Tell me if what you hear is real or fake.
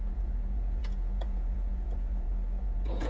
fake